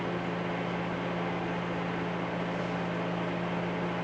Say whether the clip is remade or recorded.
recorded